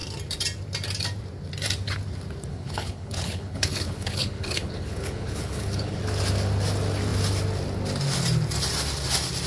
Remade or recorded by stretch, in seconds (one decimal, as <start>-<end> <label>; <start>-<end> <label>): 0.0-2.5 recorded; 2.5-6.0 remade; 6.0-9.5 recorded